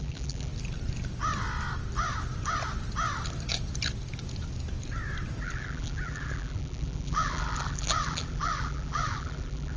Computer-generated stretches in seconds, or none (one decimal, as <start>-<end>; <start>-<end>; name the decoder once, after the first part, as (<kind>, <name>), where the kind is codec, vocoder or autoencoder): 0.0-0.5 (vocoder, BigVGAN v2); 5.4-9.8

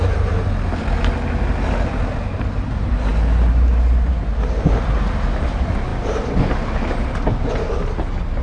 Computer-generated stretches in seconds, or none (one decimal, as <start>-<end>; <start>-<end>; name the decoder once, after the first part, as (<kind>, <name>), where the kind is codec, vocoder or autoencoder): none

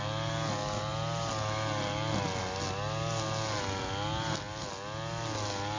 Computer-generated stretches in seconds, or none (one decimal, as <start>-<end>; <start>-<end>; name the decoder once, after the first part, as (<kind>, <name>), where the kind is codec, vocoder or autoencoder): none

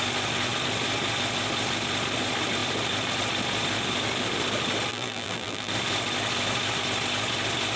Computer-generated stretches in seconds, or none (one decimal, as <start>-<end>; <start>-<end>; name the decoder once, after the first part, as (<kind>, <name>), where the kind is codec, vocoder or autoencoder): 4.9-5.7 (vocoder, BigVGAN v2)

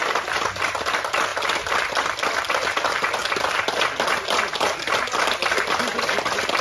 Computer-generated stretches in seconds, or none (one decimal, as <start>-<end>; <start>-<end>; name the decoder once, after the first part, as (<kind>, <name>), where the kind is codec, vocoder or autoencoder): none

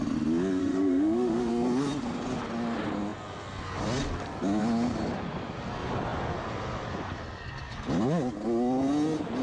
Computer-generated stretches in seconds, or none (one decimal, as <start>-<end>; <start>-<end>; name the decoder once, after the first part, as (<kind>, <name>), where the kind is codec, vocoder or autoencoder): 0.6-1.5 (autoencoder, DAC-VAE)

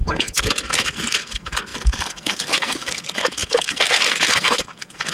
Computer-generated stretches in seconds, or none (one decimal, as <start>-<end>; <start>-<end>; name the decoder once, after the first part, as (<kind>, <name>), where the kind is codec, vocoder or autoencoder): 0.0-5.1 (codec, SNAC)